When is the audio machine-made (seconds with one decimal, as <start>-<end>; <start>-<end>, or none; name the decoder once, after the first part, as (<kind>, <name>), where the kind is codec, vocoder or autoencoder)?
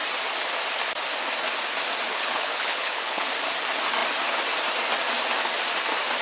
2.1-3.3 (codec, HILCodec)